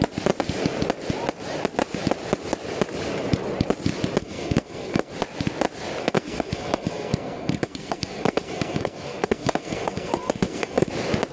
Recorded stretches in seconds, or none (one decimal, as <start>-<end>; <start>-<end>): 0.0-4.2; 5.1-6.0; 10.9-11.3